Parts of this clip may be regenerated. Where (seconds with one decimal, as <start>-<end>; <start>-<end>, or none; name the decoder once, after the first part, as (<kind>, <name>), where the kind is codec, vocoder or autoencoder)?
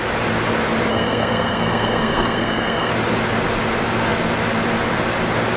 0.9-2.9 (codec, SNAC)